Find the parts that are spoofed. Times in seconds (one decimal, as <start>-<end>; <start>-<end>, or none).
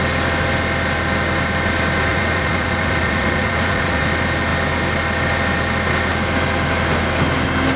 2.1-4.0